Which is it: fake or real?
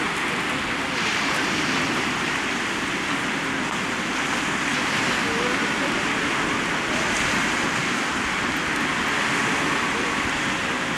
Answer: real